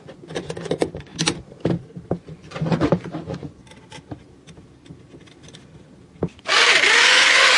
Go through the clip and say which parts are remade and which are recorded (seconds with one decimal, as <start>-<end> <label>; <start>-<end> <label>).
0.0-1.1 remade; 1.1-2.2 recorded; 2.2-3.6 remade; 3.6-7.0 recorded; 7.0-7.6 remade